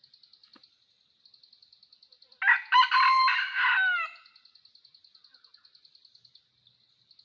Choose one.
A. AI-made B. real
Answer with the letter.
B